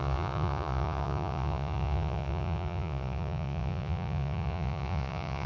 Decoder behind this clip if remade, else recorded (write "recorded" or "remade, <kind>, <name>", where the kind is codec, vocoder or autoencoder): remade, vocoder, Vocos